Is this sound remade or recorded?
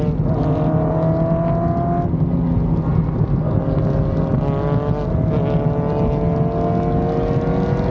recorded